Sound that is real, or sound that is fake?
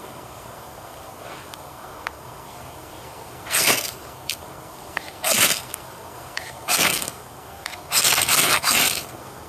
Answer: fake